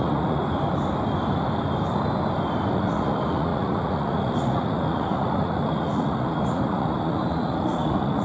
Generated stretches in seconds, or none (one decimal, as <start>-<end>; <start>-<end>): 0.0-0.4; 2.7-8.2